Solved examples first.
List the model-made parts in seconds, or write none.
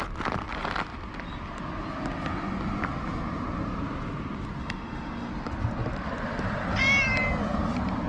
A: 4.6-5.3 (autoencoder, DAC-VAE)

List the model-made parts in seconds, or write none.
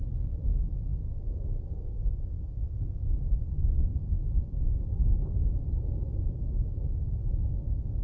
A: none